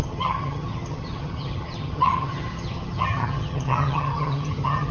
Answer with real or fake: fake